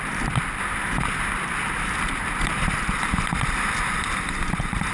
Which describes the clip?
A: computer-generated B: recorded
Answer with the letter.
A